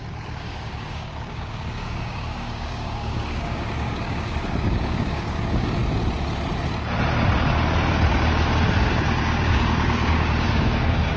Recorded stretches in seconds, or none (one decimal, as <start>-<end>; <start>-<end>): 5.8-8.8